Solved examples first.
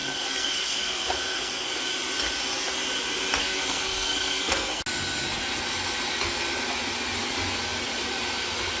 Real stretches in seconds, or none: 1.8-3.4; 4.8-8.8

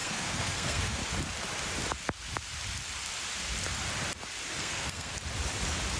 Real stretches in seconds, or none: 1.0-4.6; 5.1-6.0